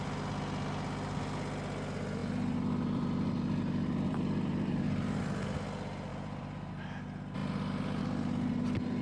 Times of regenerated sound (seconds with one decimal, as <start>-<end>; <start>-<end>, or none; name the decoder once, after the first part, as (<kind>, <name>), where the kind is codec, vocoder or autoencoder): 2.2-5.2 (vocoder, BigVGAN v2); 6.1-6.7

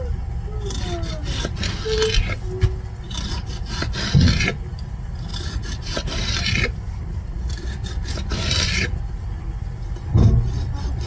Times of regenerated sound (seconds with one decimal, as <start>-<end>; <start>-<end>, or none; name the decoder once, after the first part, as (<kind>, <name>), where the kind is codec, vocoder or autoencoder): 5.3-9.9 (vocoder, BigVGAN v2)

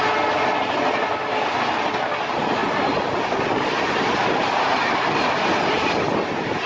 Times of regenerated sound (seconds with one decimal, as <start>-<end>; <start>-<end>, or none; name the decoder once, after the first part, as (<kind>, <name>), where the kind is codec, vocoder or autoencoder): none

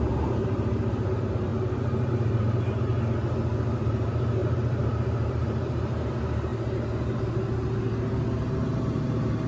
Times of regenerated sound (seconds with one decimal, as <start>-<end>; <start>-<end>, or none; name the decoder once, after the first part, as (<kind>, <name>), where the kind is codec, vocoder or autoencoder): 0.0-1.5 (vocoder, BigVGAN v2); 2.1-2.9; 3.8-6.5

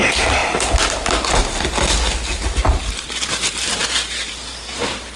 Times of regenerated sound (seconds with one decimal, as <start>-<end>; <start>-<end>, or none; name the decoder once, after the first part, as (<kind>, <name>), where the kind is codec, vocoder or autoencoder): 0.0-0.4 (vocoder, BigVGAN v2); 2.8-5.2

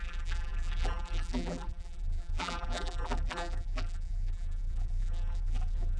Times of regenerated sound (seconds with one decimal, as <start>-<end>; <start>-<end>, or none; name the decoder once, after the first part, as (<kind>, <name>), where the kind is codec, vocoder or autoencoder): 0.0-6.0 (vocoder, BigVGAN v2)